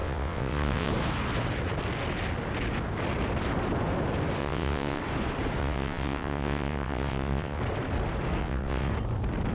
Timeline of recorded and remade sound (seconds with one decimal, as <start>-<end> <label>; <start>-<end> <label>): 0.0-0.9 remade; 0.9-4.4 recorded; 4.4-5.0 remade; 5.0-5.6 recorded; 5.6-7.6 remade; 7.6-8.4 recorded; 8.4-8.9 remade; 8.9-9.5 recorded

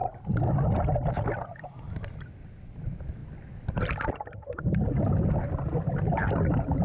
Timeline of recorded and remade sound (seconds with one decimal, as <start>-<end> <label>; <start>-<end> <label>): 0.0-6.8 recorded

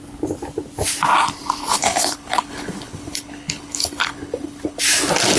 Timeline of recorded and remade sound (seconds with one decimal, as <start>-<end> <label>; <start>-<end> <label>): 0.0-1.6 recorded; 1.6-4.8 remade; 4.8-5.4 recorded

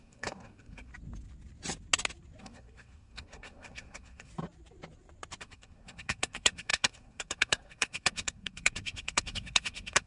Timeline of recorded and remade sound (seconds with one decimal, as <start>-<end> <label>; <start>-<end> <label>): 0.0-0.9 remade; 0.9-2.4 recorded; 2.4-4.3 remade; 4.3-5.4 recorded; 5.4-10.1 remade

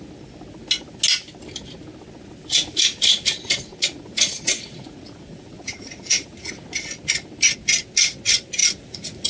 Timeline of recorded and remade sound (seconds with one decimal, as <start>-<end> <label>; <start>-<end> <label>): 0.0-3.7 recorded; 3.7-6.5 remade; 6.5-8.6 recorded; 8.6-9.3 remade